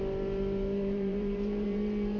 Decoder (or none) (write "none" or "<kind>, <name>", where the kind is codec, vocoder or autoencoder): vocoder, BigVGAN v2